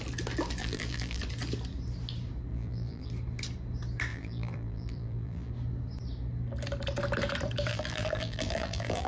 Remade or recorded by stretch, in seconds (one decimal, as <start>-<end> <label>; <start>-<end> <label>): 0.0-0.6 recorded; 0.6-1.2 remade; 1.2-2.5 recorded; 2.5-3.1 remade; 3.1-4.1 recorded; 4.1-5.5 remade; 5.5-7.7 recorded; 7.7-9.1 remade